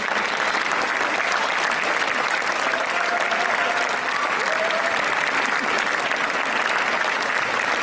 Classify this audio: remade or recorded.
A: recorded